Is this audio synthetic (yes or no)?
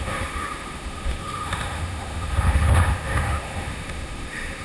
yes